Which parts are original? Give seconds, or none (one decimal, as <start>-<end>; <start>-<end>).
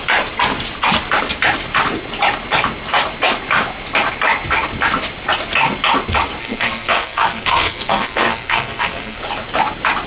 0.0-6.4; 9.2-10.1